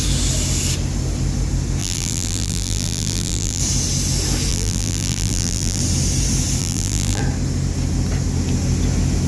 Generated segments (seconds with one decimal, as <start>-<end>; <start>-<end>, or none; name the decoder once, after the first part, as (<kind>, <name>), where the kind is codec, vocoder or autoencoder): 1.8-3.6 (vocoder, BigVGAN v2); 4.5-5.8; 6.6-7.2